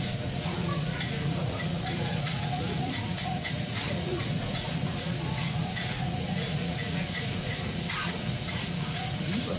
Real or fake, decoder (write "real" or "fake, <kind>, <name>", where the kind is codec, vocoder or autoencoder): fake, vocoder, Vocos